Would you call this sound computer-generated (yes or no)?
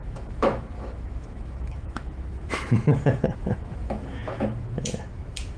yes